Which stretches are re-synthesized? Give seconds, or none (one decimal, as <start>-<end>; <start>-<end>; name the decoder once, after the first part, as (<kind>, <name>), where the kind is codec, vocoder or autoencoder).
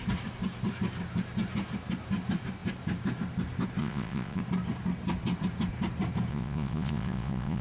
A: 3.8-4.4 (vocoder, Vocos); 6.3-7.6